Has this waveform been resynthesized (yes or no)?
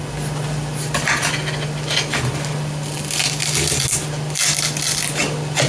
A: no